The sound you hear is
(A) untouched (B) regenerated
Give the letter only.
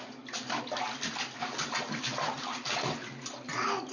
A